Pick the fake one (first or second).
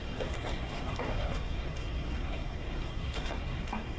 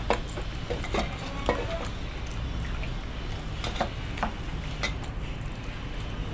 first